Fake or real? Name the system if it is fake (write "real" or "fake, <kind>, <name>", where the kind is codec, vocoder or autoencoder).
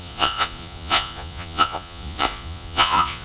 fake, vocoder, Vocos